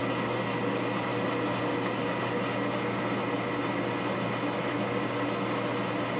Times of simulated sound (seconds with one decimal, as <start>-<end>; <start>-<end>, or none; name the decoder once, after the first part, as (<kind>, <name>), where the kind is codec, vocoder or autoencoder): none